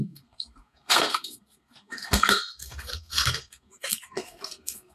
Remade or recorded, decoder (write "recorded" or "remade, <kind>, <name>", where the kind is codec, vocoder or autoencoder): remade, codec, SNAC